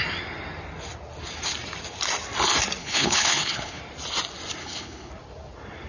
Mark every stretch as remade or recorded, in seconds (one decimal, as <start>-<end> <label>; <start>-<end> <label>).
0.0-2.8 recorded; 2.8-3.8 remade; 3.8-4.6 recorded; 4.6-5.1 remade; 5.1-5.9 recorded